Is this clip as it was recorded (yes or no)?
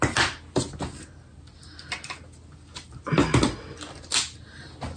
yes